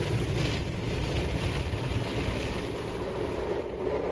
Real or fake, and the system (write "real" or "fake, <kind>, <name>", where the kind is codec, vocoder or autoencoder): real